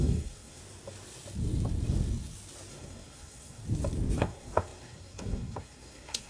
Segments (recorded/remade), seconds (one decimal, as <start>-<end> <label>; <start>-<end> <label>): 0.0-0.6 remade; 0.6-2.7 recorded; 2.7-3.6 remade; 3.6-4.2 recorded; 4.2-6.3 remade